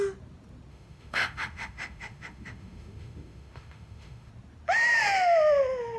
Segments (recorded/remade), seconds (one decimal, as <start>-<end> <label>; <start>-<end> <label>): 0.0-0.7 recorded; 0.7-4.3 remade; 4.3-6.0 recorded